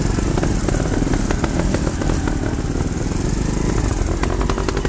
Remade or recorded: recorded